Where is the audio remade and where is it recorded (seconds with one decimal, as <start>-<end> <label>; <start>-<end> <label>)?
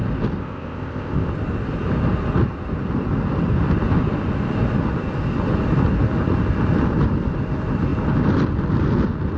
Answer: 0.0-0.4 recorded; 0.4-1.3 remade; 1.3-9.4 recorded